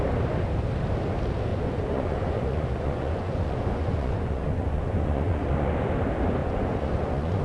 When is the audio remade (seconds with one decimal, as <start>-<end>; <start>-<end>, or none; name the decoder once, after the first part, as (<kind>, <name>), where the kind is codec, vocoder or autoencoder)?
1.5-5.9 (vocoder, Vocos); 6.4-7.4